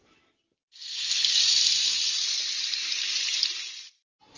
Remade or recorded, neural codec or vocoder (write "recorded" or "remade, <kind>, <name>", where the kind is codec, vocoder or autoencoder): recorded